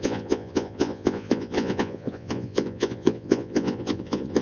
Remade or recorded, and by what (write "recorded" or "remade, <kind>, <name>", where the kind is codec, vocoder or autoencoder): remade, vocoder, Vocos